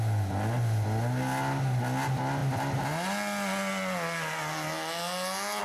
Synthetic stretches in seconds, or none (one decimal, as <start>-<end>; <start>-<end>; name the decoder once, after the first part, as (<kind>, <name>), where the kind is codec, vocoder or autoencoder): none